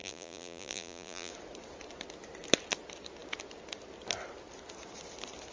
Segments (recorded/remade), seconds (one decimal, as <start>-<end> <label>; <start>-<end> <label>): 0.0-1.3 remade; 1.3-5.5 recorded